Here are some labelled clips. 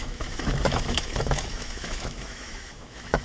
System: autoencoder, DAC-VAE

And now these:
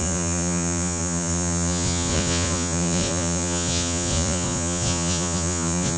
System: vocoder, Vocos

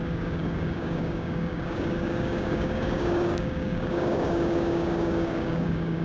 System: codec, DAC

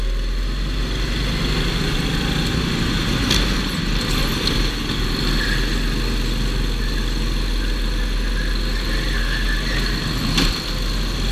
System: none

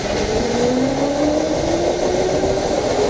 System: none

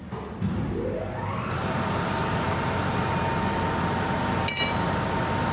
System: none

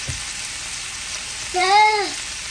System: none